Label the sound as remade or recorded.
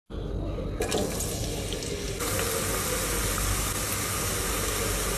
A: recorded